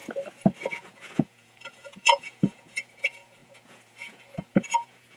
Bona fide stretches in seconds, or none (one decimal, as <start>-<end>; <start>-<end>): 0.0-0.8